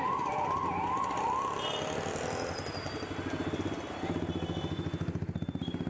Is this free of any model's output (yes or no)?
yes